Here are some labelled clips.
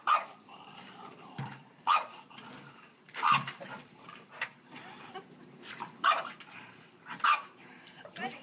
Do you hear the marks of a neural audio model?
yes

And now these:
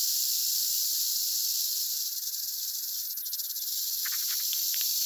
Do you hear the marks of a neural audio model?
yes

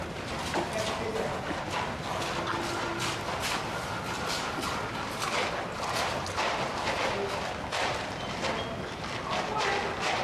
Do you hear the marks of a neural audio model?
no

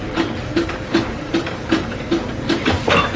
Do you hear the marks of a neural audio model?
yes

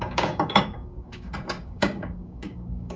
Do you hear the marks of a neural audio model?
yes